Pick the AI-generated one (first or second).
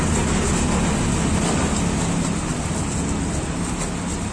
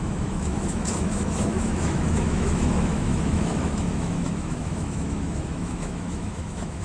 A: second